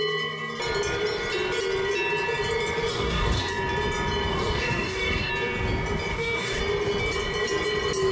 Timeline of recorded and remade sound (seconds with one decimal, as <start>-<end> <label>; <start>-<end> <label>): 0.0-2.9 recorded; 2.9-3.5 remade; 3.5-4.3 recorded; 4.3-5.3 remade; 5.3-6.1 recorded; 6.1-6.6 remade; 6.6-8.1 recorded